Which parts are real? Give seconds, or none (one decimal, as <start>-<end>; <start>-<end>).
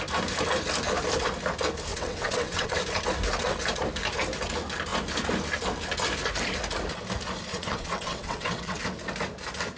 0.0-1.9; 2.8-7.5; 8.8-9.8